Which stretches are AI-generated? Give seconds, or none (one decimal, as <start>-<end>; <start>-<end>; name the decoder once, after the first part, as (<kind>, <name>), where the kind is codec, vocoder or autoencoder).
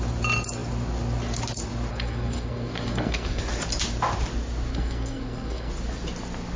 1.9-3.4 (codec, SNAC); 4.7-5.7